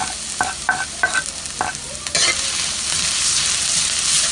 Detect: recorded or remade recorded